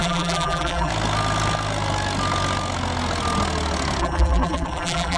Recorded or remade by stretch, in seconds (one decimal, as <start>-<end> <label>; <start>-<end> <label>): 0.0-0.9 remade; 0.9-4.0 recorded; 4.0-5.2 remade